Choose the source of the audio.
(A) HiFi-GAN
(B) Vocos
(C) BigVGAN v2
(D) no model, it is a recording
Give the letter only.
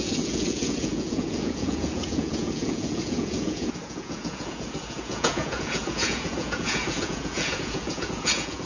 B